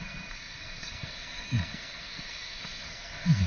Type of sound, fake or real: fake